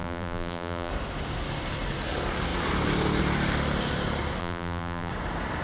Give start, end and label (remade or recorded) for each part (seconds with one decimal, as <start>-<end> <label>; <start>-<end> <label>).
0.0-0.9 remade; 0.9-4.4 recorded; 4.4-5.1 remade; 5.1-5.6 recorded